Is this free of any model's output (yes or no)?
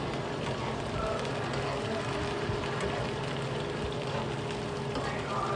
yes